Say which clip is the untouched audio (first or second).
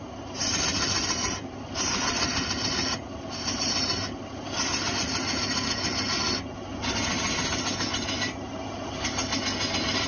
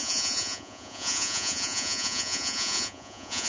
first